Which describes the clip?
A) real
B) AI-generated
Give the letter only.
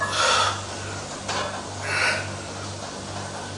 A